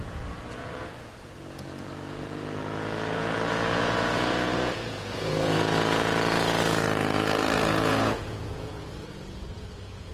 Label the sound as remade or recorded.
remade